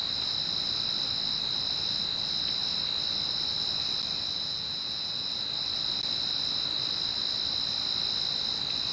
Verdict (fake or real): real